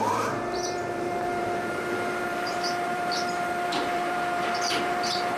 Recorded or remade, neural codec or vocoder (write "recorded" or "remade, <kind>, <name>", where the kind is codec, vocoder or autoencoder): remade, vocoder, BigVGAN v2